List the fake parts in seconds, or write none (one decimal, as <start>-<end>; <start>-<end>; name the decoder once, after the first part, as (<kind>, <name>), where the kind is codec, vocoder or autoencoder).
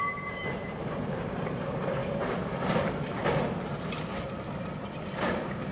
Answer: 0.0-2.0 (vocoder, BigVGAN v2); 2.7-3.2; 5.2-5.7